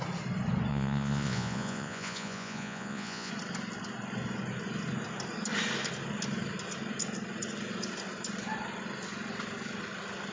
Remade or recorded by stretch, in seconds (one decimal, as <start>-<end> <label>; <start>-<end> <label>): 0.0-0.7 recorded; 0.7-3.3 remade; 3.3-10.3 recorded